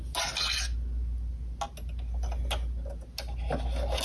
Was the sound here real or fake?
real